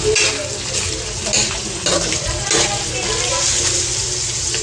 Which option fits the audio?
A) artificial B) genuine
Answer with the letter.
B